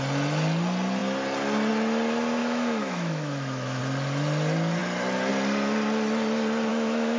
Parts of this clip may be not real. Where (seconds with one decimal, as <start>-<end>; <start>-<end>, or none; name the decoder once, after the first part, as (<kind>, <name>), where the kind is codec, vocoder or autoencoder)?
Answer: 2.4-3.8 (autoencoder, DAC-VAE); 6.7-7.2